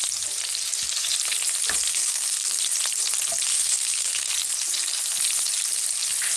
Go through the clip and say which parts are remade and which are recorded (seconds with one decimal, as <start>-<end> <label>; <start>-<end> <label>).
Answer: 0.0-1.9 recorded; 1.9-2.6 remade; 2.6-3.5 recorded; 3.5-4.3 remade; 4.3-6.4 recorded